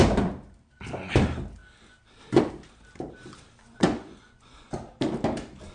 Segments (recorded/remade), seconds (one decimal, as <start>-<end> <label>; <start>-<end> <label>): 0.0-3.6 recorded; 3.6-4.7 remade; 4.7-5.7 recorded